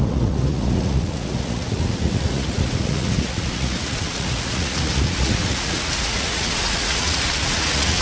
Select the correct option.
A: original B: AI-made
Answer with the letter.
B